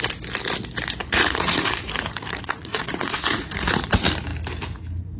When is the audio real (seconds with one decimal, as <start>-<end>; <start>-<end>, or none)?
0.0-1.0; 3.9-5.2